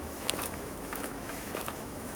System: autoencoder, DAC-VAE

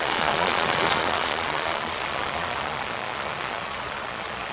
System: vocoder, Vocos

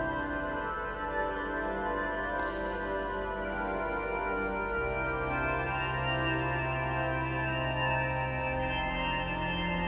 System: none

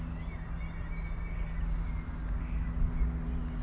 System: none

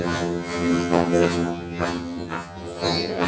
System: vocoder, HiFi-GAN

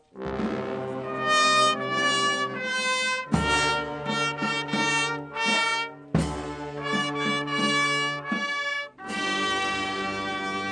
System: none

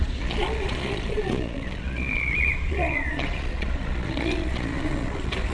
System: vocoder, Vocos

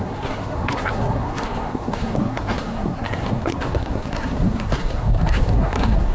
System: codec, SNAC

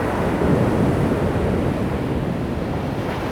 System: none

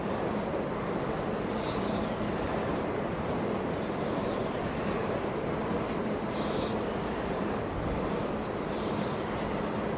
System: none